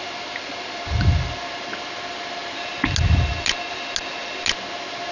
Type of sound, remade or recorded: recorded